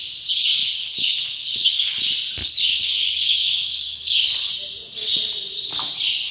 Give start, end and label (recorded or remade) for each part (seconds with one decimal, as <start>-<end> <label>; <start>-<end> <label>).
0.0-0.6 recorded; 0.6-2.0 remade; 2.0-2.4 recorded; 2.4-4.5 remade; 4.5-6.3 recorded